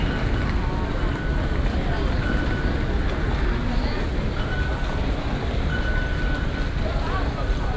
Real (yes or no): yes